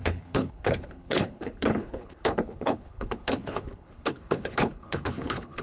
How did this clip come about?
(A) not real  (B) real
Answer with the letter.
A